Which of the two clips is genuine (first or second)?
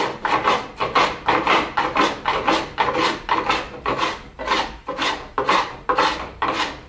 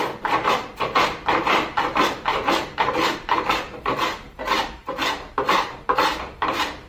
first